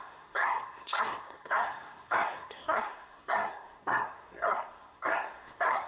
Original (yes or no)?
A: no